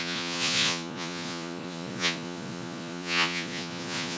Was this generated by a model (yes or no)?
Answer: yes